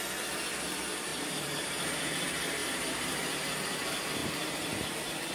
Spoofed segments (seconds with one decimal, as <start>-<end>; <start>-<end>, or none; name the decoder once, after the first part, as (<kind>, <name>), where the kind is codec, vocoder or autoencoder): 1.1-2.0 (vocoder, BigVGAN v2); 2.6-3.5; 4.2-5.3